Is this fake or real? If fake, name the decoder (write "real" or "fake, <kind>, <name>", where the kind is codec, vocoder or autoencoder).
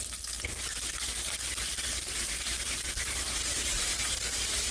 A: fake, vocoder, BigVGAN v2